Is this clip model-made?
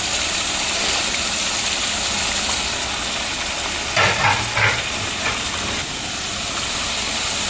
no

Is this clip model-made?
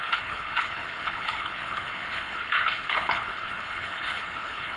yes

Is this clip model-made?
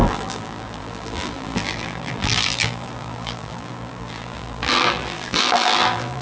yes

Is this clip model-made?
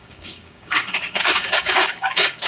yes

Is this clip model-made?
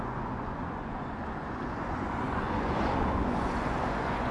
yes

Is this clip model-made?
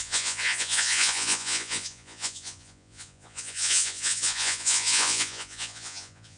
yes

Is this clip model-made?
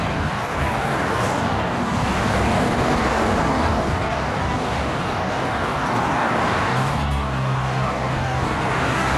yes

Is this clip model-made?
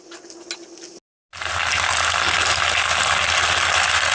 no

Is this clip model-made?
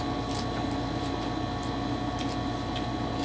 no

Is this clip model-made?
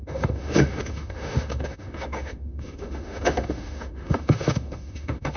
yes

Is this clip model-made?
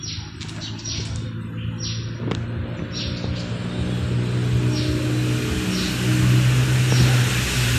no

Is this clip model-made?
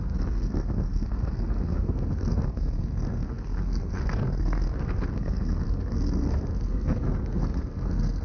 yes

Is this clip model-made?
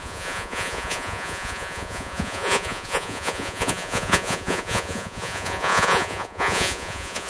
yes